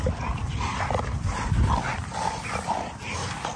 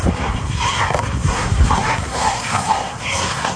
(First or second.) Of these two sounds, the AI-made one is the second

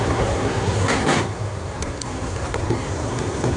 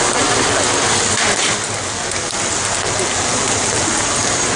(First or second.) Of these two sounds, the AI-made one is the first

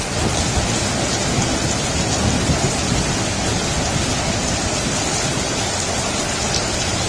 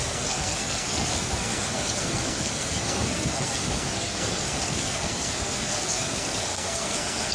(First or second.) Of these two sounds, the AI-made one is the second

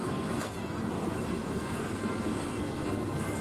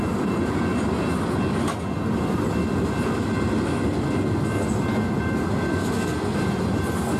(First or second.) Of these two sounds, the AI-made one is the first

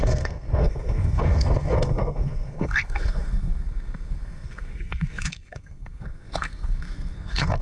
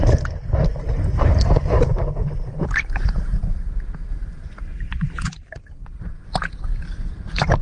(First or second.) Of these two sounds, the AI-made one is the first